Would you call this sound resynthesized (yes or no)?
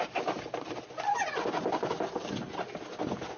no